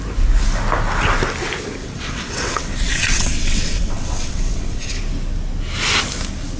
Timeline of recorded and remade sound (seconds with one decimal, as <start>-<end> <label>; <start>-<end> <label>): 0.0-1.8 recorded; 1.8-4.9 remade; 4.9-6.6 recorded